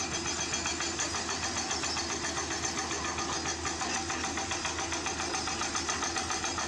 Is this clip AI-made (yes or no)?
no